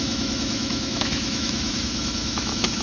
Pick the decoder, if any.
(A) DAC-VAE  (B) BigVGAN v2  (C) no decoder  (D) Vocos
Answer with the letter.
A